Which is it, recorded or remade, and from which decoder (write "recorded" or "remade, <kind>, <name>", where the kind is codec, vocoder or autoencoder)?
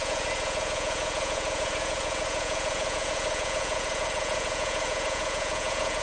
remade, vocoder, Vocos